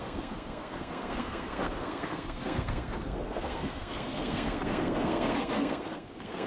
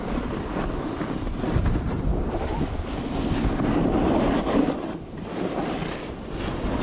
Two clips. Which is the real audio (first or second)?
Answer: second